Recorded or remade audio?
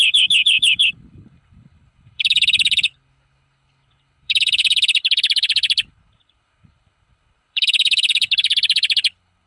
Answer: remade